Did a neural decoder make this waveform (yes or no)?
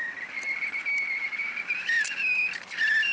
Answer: no